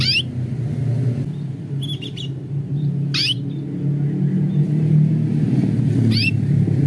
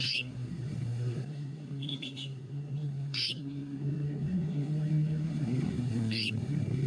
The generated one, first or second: second